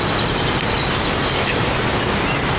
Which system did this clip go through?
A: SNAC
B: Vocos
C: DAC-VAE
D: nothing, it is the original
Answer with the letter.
D